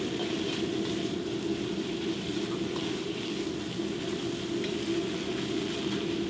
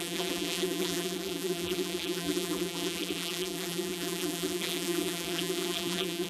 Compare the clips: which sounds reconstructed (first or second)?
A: second